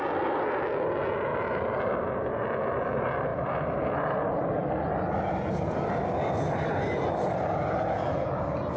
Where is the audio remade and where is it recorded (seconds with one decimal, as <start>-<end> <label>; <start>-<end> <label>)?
0.0-1.3 recorded; 1.3-1.8 remade; 1.8-3.3 recorded; 3.3-7.1 remade; 7.1-8.8 recorded